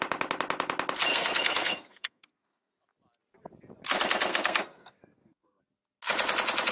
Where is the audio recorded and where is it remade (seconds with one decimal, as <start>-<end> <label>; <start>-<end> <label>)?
0.0-1.1 recorded; 1.1-2.7 remade; 2.7-4.3 recorded; 4.3-5.6 remade; 5.6-6.7 recorded

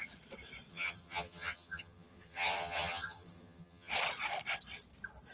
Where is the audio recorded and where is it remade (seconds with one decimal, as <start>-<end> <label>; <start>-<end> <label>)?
0.0-0.7 recorded; 0.7-3.9 remade; 3.9-5.3 recorded

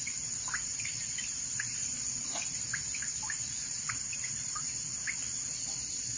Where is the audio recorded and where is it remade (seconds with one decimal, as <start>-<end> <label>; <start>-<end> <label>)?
0.0-6.2 remade

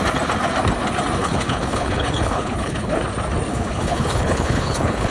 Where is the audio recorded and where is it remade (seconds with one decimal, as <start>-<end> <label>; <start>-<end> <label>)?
0.0-1.2 recorded; 1.2-3.0 remade; 3.0-3.5 recorded; 3.5-5.1 remade

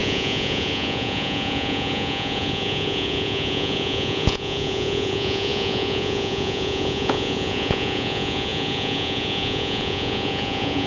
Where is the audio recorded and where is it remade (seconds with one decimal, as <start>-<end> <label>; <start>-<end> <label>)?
0.0-10.9 remade